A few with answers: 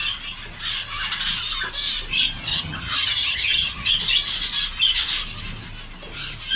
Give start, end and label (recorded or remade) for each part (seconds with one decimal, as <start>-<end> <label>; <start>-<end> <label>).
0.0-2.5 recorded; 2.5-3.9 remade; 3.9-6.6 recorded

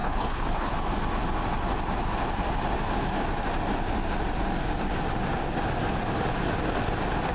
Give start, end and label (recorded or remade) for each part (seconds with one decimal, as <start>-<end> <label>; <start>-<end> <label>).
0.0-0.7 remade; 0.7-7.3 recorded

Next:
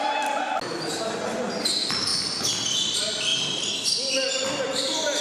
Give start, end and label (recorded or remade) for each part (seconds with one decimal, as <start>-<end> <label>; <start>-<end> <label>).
0.0-5.2 recorded